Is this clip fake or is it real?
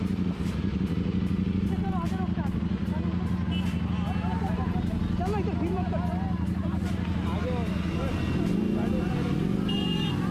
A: real